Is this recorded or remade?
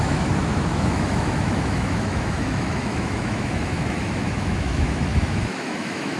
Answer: remade